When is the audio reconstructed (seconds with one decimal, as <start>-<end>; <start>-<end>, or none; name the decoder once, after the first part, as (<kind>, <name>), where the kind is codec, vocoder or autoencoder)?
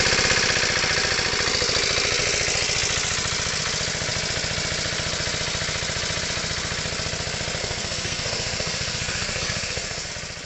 7.6-10.1 (codec, SNAC)